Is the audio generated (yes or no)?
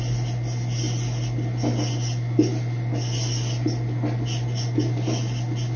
no